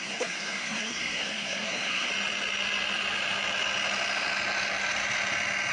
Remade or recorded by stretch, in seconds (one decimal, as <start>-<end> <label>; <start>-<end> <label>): 0.0-2.1 remade; 2.1-5.7 recorded